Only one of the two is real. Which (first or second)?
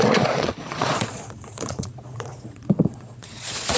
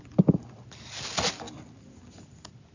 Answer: second